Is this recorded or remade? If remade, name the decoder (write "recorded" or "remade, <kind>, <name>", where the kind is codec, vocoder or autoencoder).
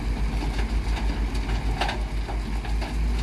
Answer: recorded